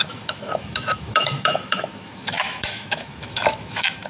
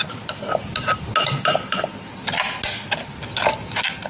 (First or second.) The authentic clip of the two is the second